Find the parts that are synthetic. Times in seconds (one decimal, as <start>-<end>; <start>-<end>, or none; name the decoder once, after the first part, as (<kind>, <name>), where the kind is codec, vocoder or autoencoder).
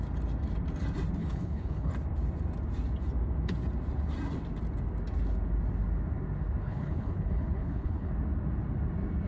1.2-1.9 (codec, HILCodec); 6.6-8.1